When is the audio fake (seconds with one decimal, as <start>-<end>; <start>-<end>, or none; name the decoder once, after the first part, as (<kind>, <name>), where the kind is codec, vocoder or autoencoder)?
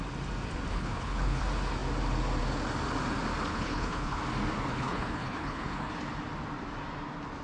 0.7-1.4 (codec, HILCodec); 3.5-4.2; 4.7-5.9